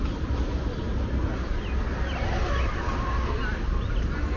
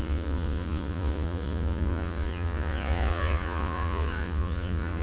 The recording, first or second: first